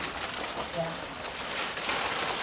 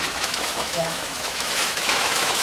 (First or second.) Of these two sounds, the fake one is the second